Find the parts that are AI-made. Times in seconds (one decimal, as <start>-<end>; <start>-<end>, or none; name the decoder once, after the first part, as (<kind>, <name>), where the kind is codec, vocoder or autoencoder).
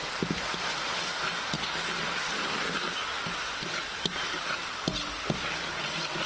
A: none